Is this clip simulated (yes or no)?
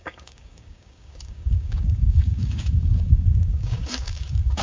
yes